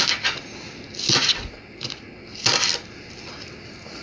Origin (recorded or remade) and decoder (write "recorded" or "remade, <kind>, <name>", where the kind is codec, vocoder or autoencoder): recorded